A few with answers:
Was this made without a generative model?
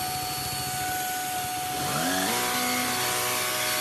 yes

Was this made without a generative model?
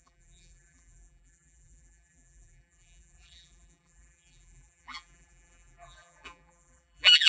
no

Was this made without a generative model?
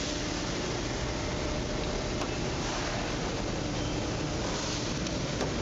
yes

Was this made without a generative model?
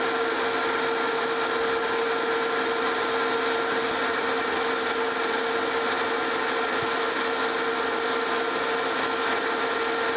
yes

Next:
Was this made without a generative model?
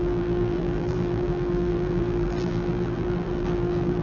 no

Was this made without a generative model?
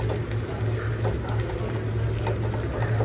yes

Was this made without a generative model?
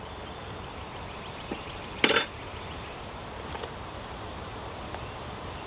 no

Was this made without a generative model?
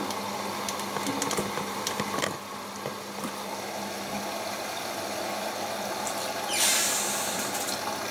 yes